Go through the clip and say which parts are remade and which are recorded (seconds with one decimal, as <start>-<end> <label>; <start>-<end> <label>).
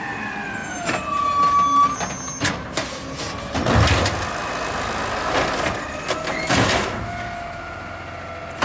0.0-8.6 recorded